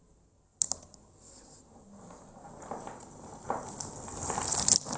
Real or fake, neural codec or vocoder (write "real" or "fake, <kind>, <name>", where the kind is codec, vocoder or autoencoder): real